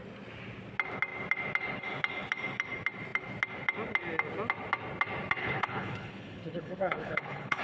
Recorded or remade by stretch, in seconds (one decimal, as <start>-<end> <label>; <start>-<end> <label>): 0.0-5.4 recorded; 5.4-7.6 remade